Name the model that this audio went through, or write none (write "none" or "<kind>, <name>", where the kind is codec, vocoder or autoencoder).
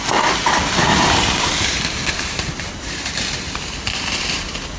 vocoder, BigVGAN v2